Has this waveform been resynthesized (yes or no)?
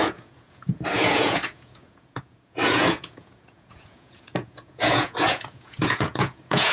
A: yes